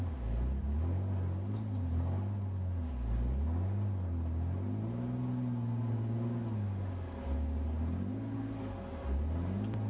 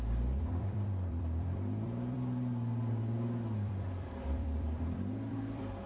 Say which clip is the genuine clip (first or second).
first